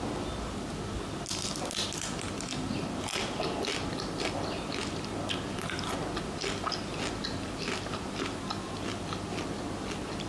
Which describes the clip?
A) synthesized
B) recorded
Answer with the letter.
B